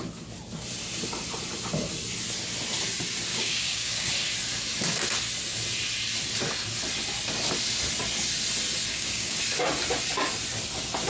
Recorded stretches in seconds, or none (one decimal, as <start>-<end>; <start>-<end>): 0.0-3.3; 4.1-8.9; 9.4-11.1